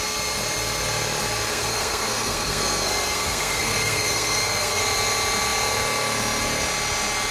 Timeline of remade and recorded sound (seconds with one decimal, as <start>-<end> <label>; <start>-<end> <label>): 0.0-1.5 recorded; 1.5-4.8 remade; 4.8-7.3 recorded